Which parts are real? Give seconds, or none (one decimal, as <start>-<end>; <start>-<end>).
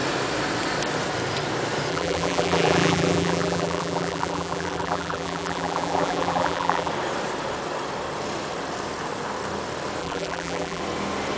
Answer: 0.0-1.9; 6.9-10.0; 10.8-11.4